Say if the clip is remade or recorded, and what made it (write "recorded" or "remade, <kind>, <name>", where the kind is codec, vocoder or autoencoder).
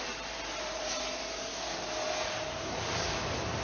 recorded